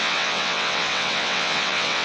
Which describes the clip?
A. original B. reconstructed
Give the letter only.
B